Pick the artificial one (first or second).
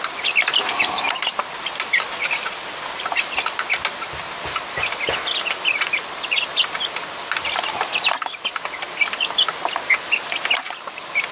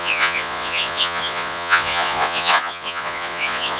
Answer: second